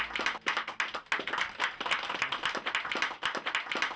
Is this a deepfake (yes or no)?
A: no